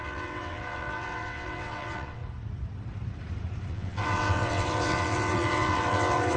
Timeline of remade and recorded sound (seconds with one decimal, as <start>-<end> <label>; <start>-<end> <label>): 0.0-2.2 remade; 2.2-3.7 recorded; 3.7-6.4 remade